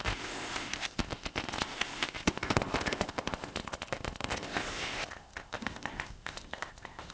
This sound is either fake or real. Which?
fake